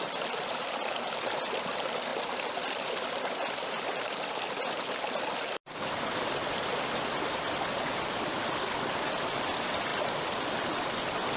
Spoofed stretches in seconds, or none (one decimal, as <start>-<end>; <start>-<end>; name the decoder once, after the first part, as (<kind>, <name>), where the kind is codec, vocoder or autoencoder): none